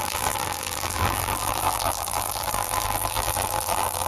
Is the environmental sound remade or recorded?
remade